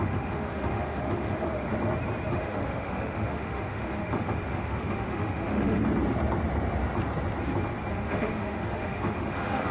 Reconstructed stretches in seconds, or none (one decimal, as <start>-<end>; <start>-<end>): 0.0-1.7; 2.3-5.8; 7.9-9.7